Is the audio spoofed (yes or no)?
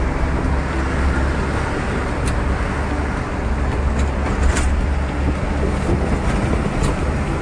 no